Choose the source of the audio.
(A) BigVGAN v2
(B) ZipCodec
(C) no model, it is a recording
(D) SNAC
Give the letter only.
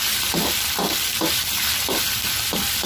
C